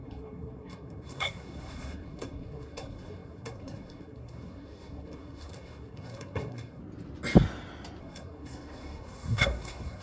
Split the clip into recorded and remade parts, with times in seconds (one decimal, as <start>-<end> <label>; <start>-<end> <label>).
0.0-6.8 remade; 6.8-8.0 recorded; 8.0-10.0 remade